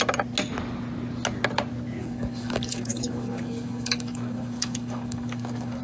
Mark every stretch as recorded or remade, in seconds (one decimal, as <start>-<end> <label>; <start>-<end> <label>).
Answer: 0.0-2.0 recorded; 2.0-5.8 remade